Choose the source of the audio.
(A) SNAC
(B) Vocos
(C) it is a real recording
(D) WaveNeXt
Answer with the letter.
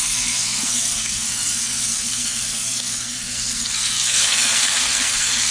A